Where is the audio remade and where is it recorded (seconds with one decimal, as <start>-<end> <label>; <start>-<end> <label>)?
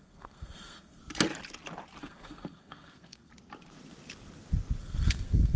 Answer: 0.0-1.0 remade; 1.0-2.0 recorded; 2.0-3.3 remade; 3.3-4.8 recorded; 4.8-5.6 remade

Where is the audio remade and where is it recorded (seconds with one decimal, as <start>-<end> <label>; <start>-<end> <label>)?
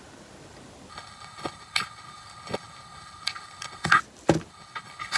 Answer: 0.0-0.9 recorded; 0.9-4.0 remade; 4.0-4.5 recorded; 4.5-5.2 remade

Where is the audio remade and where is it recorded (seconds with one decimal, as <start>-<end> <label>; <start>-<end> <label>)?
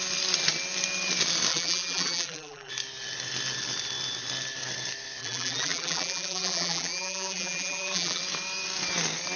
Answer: 0.0-1.5 recorded; 1.5-2.7 remade; 2.7-5.2 recorded; 5.2-8.2 remade; 8.2-9.4 recorded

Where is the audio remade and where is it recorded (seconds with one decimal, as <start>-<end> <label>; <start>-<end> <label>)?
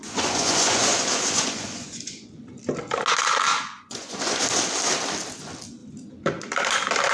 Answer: 0.0-2.4 remade; 2.4-3.5 recorded; 3.5-4.4 remade; 4.4-7.1 recorded